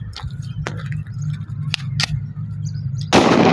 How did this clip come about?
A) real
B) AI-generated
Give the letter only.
A